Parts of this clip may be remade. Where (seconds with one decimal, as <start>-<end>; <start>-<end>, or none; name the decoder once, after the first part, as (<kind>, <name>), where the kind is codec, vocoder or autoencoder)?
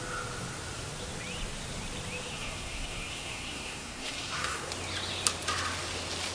2.3-4.7 (codec, SNAC)